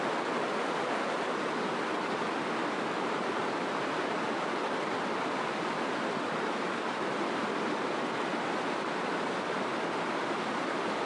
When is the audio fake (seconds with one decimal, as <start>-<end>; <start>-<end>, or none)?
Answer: 0.0-3.4; 4.0-7.4; 8.3-11.1